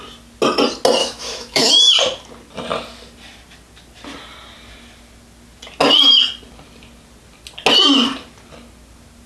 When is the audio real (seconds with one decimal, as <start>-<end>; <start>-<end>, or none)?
0.0-1.0; 1.7-9.3